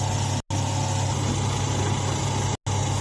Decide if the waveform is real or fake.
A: real